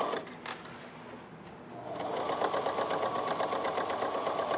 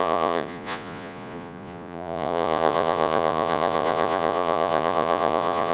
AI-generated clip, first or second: second